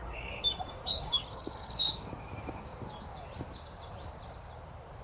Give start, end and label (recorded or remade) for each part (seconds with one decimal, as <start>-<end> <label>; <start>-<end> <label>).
0.0-2.7 remade; 2.7-5.0 recorded